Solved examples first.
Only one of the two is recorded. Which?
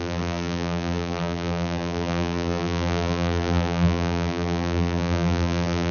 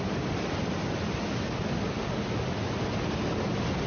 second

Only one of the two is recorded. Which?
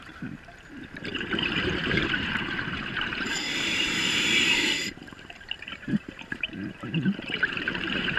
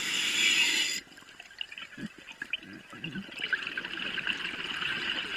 second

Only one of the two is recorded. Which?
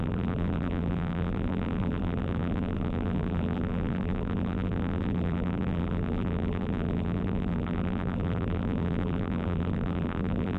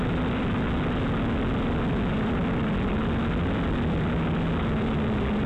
second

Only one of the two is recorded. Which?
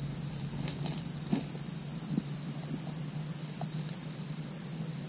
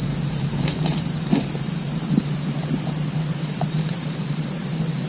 first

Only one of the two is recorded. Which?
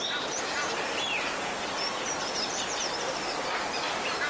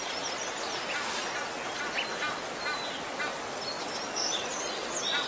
second